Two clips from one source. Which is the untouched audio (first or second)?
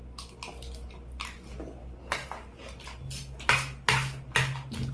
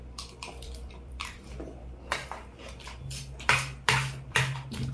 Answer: first